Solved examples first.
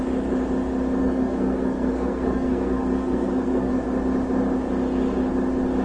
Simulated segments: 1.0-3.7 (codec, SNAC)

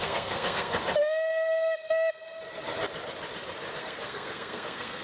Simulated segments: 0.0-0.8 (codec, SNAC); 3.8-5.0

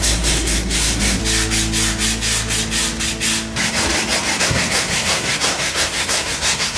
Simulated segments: 0.0-1.2 (codec, SNAC); 4.4-6.8

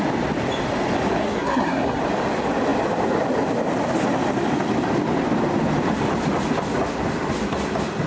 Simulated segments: 1.2-2.0 (codec, SNAC)

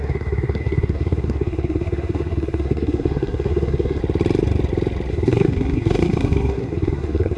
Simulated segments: 0.0-4.0 (codec, SNAC); 5.1-7.4